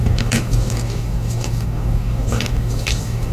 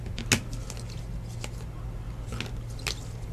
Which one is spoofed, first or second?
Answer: first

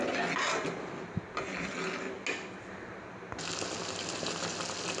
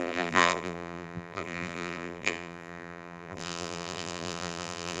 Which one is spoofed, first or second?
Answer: second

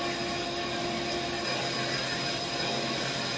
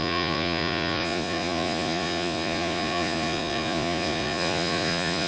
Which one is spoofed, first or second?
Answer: second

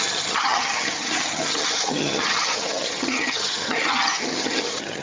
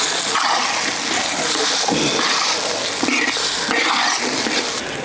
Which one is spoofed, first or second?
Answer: first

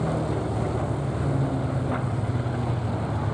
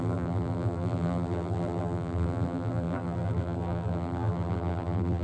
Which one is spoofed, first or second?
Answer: second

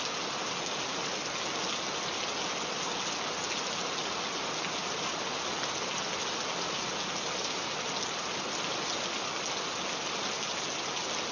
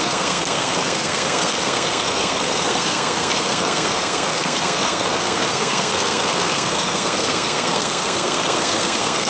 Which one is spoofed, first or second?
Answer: second